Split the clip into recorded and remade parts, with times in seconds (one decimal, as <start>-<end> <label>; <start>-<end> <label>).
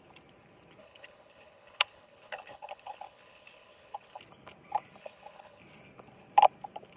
0.0-0.8 recorded; 0.8-4.2 remade; 4.2-5.0 recorded; 5.0-5.6 remade; 5.6-7.0 recorded